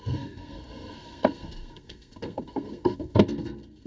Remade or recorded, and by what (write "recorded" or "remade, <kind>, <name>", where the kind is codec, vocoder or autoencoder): remade, codec, SNAC